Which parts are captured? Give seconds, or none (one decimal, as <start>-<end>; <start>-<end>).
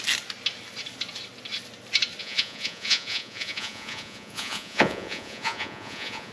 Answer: 0.0-2.2